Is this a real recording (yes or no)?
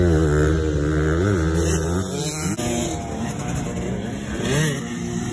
yes